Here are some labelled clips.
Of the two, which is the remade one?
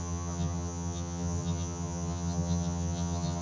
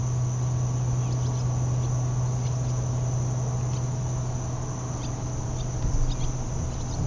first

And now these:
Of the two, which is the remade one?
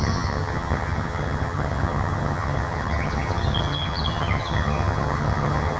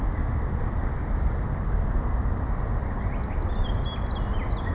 first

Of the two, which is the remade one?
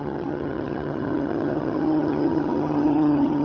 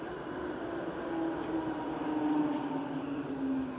first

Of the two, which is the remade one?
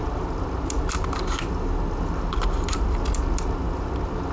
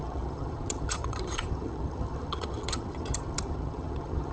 second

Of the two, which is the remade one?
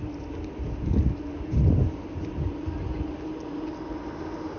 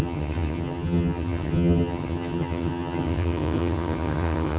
second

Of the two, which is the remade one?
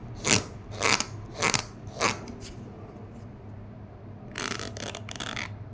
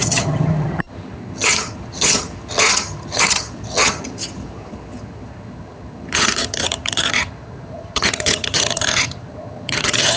second